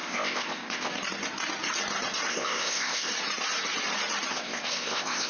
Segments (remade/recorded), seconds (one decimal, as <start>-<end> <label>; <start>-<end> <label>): 0.0-0.9 remade; 0.9-2.3 recorded; 2.3-3.1 remade; 3.1-4.3 recorded; 4.3-5.3 remade